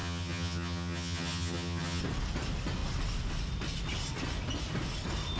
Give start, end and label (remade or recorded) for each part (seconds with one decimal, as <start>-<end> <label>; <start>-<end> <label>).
0.0-2.0 remade; 2.0-5.4 recorded

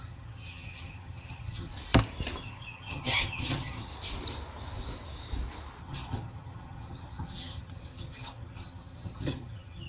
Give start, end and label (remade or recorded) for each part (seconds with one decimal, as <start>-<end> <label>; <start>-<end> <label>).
0.0-1.7 remade; 1.7-2.4 recorded; 2.4-3.9 remade; 3.9-5.8 recorded; 5.8-9.9 remade

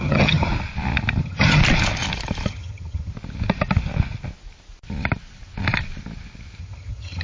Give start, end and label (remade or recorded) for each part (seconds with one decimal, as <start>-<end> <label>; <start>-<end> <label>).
0.0-0.5 remade; 0.5-1.2 recorded; 1.2-1.6 remade; 1.6-2.5 recorded; 2.5-3.1 remade; 3.1-6.6 recorded; 6.6-7.2 remade

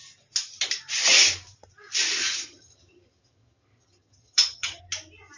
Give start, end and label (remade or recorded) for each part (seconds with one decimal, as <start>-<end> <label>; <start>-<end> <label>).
0.0-2.2 recorded; 2.2-4.8 remade; 4.8-5.4 recorded

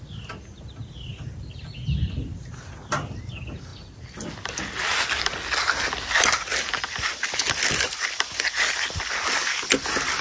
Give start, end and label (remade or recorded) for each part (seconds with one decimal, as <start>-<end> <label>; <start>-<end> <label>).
0.0-10.2 recorded

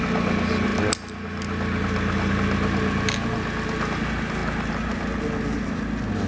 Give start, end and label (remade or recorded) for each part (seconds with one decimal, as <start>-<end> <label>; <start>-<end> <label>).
0.0-6.3 recorded

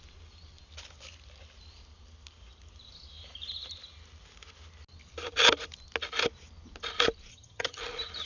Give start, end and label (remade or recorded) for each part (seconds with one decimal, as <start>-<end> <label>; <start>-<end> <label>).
0.0-7.3 recorded; 7.3-7.8 remade; 7.8-8.3 recorded